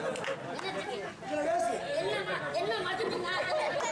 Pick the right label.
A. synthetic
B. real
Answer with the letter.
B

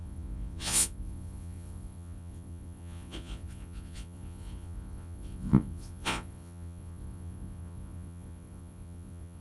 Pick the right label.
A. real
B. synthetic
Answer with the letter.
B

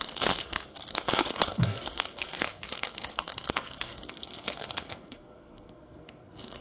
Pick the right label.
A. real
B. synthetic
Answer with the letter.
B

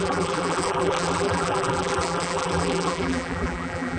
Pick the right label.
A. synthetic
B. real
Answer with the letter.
A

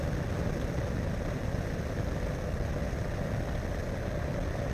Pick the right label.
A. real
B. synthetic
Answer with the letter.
A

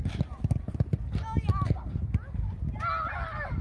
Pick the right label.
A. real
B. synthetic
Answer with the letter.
A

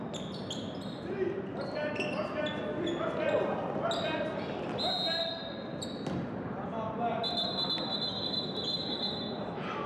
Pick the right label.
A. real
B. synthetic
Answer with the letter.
A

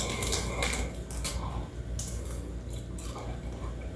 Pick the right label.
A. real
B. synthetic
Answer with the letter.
A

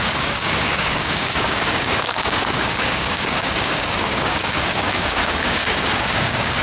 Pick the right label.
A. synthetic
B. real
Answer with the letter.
A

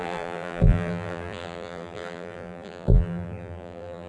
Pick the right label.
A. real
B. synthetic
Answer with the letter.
B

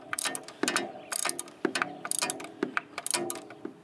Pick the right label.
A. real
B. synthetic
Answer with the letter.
A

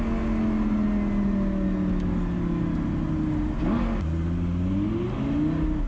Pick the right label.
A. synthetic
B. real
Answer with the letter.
B